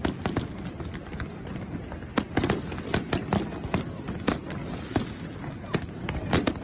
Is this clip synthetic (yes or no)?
no